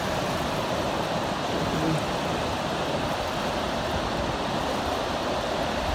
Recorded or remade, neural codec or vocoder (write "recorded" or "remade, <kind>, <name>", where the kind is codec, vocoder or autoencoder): recorded